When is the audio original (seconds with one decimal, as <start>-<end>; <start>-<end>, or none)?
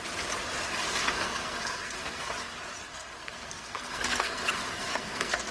0.0-0.8; 2.3-2.9